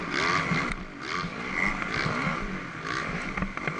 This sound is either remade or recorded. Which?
recorded